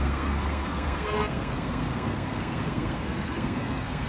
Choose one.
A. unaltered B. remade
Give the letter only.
B